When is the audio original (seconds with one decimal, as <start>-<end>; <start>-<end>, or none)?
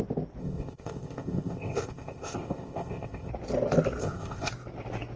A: 0.0-0.4; 3.3-4.0; 4.5-5.2